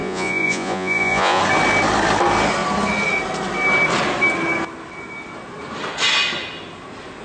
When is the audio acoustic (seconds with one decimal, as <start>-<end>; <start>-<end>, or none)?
1.4-7.2